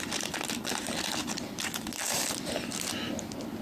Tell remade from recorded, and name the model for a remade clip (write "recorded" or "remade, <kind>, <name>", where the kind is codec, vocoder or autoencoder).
recorded